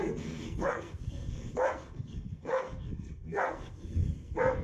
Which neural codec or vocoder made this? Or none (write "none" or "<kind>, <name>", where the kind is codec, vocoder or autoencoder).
codec, SNAC